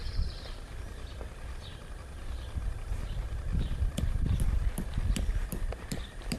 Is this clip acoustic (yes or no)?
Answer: no